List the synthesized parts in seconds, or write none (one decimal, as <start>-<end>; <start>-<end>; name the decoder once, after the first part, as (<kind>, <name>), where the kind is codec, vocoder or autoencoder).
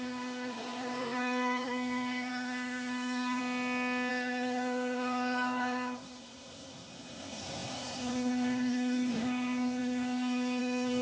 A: 0.0-3.4 (codec, SNAC); 4.1-11.0